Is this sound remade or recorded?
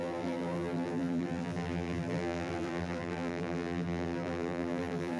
remade